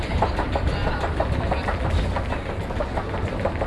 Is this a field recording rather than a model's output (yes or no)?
yes